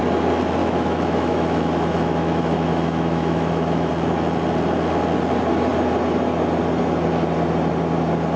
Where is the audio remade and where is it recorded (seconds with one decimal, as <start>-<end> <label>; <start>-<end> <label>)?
0.0-0.6 recorded; 0.6-3.9 remade; 3.9-8.4 recorded